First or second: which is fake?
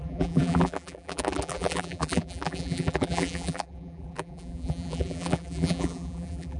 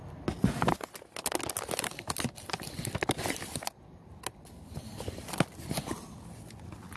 first